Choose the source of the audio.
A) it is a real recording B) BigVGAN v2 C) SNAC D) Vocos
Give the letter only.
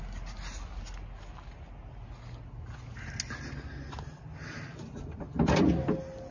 A